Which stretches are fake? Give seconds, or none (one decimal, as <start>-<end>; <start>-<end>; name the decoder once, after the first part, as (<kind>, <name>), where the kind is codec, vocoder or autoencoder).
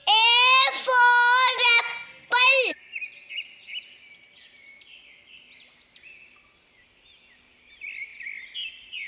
none